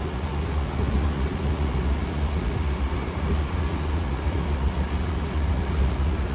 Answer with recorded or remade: remade